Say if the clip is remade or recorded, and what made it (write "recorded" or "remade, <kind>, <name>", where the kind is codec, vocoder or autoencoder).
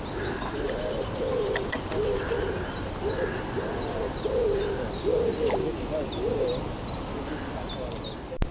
recorded